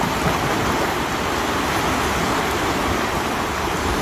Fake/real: real